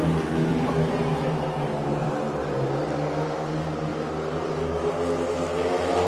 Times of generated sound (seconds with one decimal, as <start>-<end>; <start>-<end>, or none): 0.5-1.0; 2.0-2.7